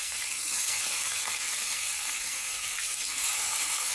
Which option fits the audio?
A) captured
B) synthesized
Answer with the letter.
B